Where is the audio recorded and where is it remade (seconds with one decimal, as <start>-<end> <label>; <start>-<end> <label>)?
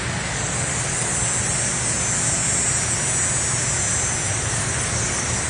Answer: 0.0-1.1 remade; 1.1-4.3 recorded; 4.3-5.5 remade